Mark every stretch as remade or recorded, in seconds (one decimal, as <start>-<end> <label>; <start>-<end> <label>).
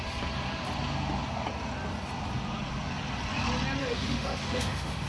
0.0-3.8 recorded; 3.8-5.1 remade